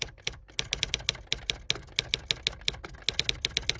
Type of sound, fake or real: real